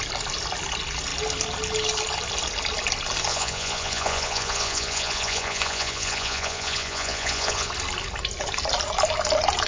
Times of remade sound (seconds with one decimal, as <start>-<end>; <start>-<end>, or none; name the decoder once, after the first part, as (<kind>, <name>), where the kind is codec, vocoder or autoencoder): 3.3-7.7 (vocoder, Vocos)